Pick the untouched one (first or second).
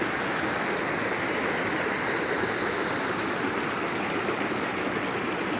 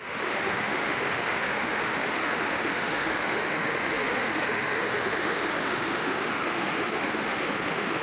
first